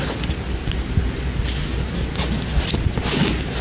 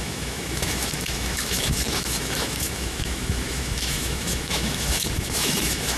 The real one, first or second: first